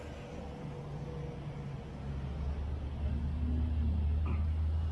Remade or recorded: recorded